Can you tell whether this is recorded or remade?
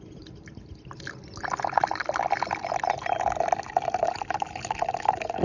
recorded